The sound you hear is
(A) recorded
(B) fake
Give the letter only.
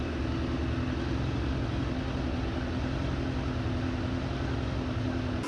A